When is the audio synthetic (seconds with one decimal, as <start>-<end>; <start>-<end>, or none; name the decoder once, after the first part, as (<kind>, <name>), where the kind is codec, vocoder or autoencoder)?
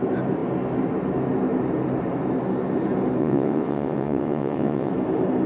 3.2-4.9 (vocoder, WaveNeXt)